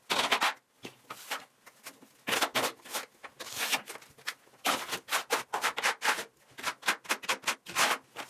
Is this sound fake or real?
real